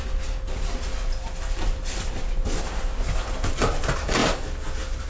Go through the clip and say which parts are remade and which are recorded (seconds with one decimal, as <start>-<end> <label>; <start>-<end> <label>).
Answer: 0.0-5.1 recorded